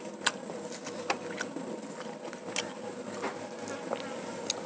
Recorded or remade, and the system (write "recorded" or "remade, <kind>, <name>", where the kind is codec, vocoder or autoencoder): recorded